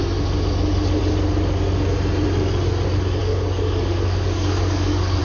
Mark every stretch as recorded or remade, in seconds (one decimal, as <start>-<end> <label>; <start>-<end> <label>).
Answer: 0.0-3.2 recorded; 3.2-5.2 remade